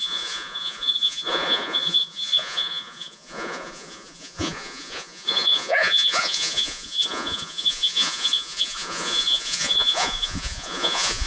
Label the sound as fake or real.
fake